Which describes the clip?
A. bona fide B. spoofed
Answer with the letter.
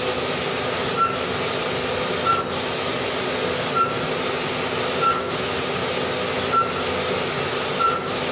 A